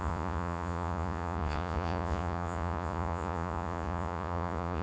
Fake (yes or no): yes